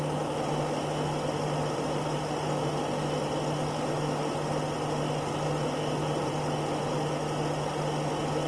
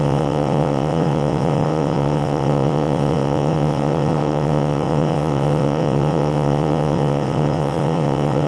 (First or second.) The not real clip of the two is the second